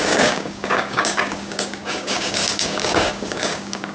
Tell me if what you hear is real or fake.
fake